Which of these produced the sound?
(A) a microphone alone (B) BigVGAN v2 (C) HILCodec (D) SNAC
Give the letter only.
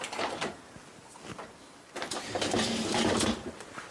A